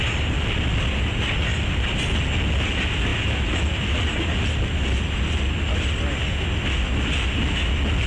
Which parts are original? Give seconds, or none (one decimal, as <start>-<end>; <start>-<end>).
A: 0.0-8.1